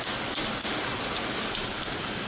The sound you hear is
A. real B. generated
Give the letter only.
A